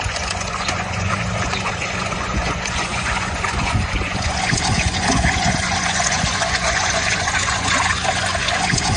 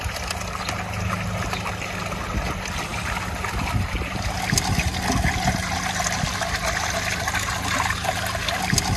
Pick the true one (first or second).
second